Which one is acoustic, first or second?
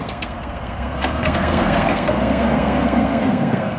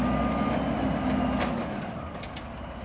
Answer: second